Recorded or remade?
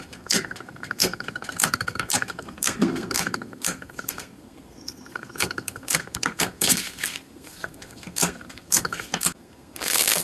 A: remade